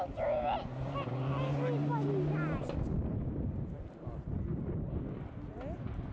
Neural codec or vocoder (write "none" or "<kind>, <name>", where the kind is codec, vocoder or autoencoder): none